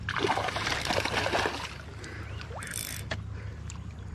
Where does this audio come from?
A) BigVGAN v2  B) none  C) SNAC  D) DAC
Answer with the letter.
B